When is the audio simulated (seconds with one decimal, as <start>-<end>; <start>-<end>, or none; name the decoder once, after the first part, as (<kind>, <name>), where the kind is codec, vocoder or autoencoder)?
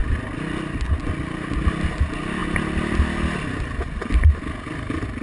none